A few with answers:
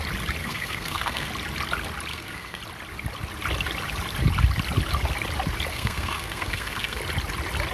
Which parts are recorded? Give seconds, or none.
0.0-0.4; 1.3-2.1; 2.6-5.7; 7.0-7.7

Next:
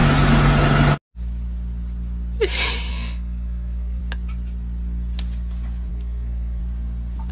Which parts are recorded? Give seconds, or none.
0.0-2.9; 4.0-5.9; 6.6-7.3

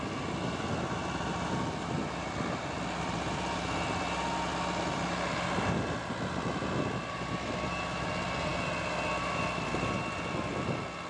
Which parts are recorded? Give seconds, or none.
0.0-11.1

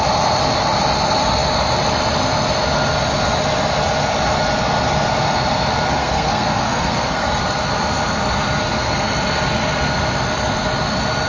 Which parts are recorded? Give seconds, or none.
0.0-6.0; 7.4-11.3

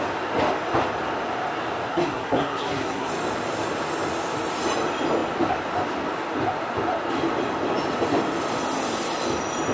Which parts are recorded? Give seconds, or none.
0.0-1.9; 3.1-9.7

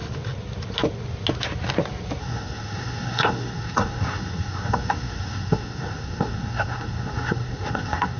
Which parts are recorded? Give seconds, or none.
0.0-2.2